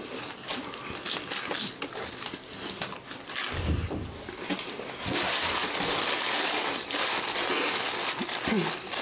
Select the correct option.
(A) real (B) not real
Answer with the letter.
A